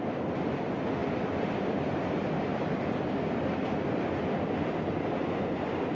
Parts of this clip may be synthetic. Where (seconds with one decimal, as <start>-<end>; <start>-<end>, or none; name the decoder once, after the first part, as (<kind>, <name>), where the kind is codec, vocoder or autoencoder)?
none